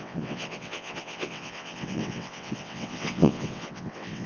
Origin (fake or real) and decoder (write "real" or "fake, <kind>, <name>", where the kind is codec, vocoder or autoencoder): fake, vocoder, WaveNeXt